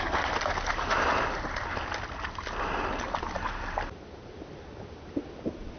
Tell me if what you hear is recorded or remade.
recorded